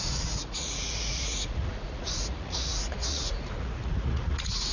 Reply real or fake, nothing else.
fake